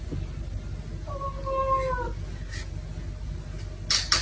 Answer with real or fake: real